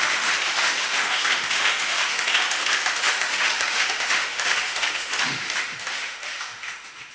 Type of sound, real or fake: fake